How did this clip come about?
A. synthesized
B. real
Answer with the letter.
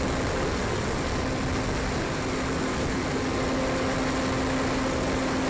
B